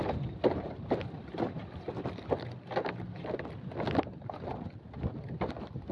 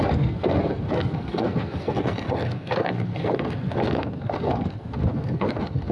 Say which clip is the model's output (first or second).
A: second